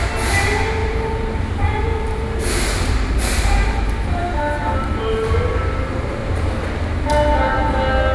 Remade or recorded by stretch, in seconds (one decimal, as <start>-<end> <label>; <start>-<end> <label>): 0.0-0.8 recorded; 0.8-5.3 remade; 5.3-6.2 recorded; 6.2-6.7 remade; 6.7-8.1 recorded